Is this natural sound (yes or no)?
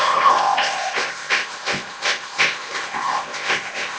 no